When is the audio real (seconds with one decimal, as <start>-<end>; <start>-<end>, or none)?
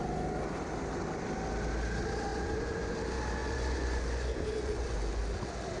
0.0-2.3; 2.9-3.4; 5.2-5.8